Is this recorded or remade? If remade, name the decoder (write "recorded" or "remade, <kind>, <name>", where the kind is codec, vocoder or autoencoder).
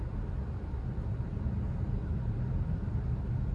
recorded